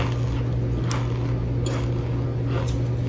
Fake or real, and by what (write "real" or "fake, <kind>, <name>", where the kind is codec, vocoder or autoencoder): real